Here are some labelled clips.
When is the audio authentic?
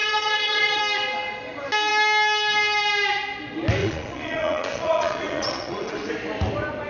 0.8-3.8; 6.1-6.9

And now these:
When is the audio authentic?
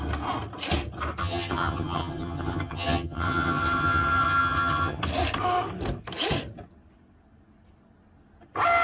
0.0-1.2; 5.0-8.8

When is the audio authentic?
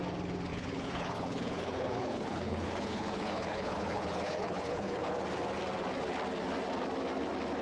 0.0-0.5; 5.1-7.6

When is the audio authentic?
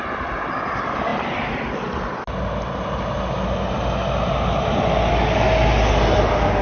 0.0-6.6